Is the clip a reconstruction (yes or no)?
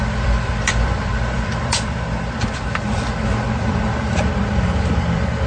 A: yes